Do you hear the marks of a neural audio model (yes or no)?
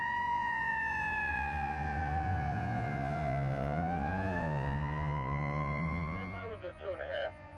yes